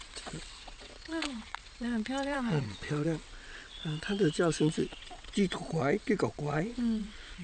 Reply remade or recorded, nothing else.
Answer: remade